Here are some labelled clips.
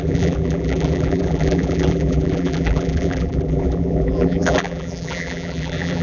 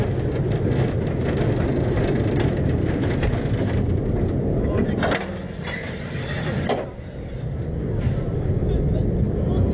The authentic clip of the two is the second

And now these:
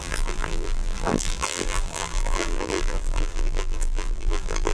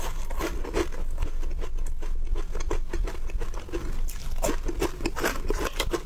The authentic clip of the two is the second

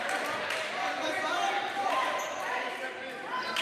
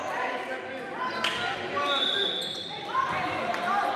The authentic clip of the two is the second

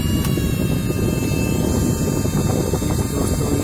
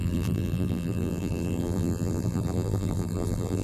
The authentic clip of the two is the first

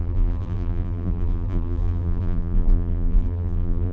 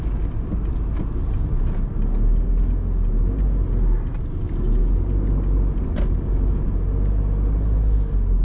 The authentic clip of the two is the second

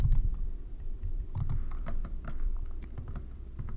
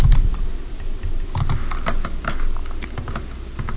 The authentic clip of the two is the second